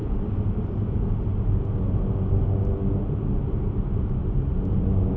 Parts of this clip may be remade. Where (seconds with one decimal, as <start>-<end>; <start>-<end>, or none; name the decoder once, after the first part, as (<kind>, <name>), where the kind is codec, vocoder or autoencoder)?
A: none